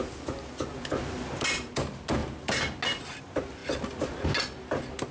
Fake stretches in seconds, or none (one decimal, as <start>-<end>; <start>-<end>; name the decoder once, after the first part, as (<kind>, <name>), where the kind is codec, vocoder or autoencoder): none